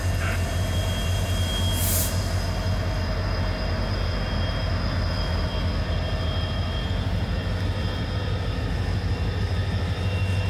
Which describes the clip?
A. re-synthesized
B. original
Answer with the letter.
B